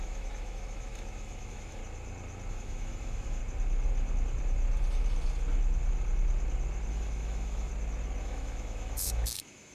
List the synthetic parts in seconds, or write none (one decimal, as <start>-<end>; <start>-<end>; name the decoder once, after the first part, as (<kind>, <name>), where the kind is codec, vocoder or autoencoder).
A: 0.0-1.8 (autoencoder, DAC-VAE); 2.5-3.4; 6.9-7.7; 8.2-9.7